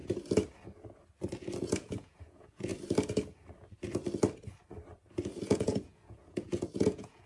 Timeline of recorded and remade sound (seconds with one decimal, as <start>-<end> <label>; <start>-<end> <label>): 0.0-1.6 recorded; 1.6-2.7 remade; 2.7-5.3 recorded; 5.3-7.3 remade